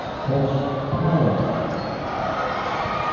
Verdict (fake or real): real